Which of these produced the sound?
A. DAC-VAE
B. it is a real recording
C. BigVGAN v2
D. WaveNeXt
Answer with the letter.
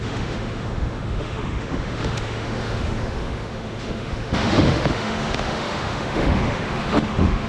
A